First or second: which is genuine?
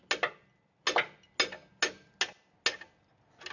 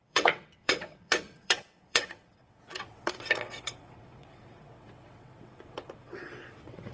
first